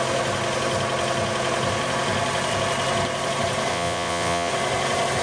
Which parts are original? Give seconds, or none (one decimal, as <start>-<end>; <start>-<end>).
0.0-3.7; 4.5-5.2